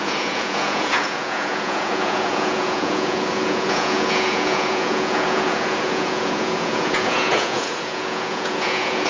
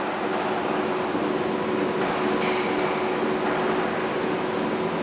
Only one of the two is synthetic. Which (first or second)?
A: first